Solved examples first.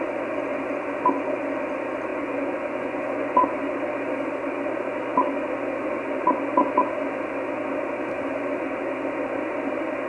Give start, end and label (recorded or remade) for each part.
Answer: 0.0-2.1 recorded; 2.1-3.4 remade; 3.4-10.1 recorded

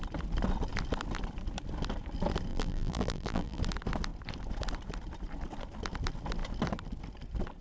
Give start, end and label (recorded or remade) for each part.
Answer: 0.0-2.5 recorded; 2.5-3.6 remade; 3.6-7.6 recorded

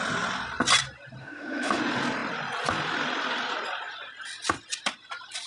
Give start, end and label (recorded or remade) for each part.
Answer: 0.0-1.2 recorded; 1.2-1.8 remade; 1.8-5.5 recorded

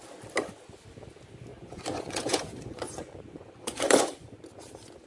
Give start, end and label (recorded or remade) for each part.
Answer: 0.0-1.5 recorded; 1.5-4.4 remade; 4.4-5.1 recorded

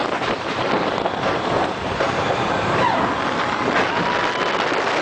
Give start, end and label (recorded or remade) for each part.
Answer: 0.0-3.0 remade; 3.0-5.0 recorded

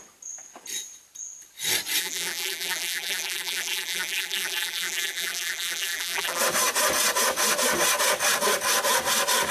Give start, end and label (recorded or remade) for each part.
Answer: 0.0-2.0 recorded; 2.0-6.4 remade; 6.4-9.5 recorded

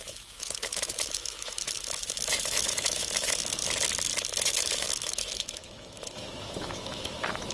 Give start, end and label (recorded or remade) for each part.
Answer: 0.0-3.6 remade; 3.6-4.4 recorded; 4.4-7.5 remade